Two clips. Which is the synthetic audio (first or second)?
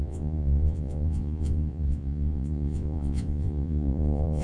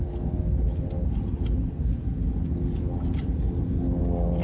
first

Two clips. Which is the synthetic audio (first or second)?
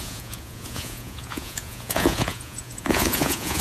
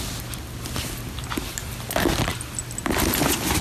first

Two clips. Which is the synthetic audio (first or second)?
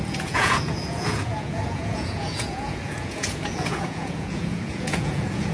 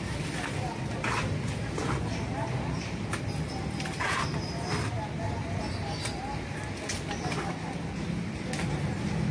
first